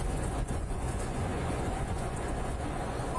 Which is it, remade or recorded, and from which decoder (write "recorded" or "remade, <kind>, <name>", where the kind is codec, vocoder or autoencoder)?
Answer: remade, vocoder, Vocos